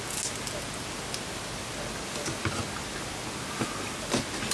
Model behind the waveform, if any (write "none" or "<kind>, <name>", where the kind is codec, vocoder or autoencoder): none